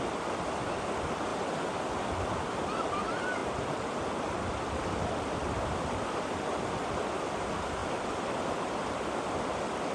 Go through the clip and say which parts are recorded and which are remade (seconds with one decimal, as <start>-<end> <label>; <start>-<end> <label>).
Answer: 0.0-9.9 recorded